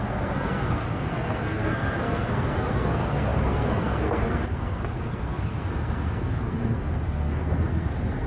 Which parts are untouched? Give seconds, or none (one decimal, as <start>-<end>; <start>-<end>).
none